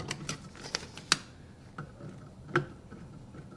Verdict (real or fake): real